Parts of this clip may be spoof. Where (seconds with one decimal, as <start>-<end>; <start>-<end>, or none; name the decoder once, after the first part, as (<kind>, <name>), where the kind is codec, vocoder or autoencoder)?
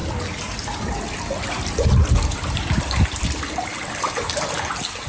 none